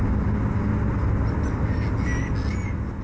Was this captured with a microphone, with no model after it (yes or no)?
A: yes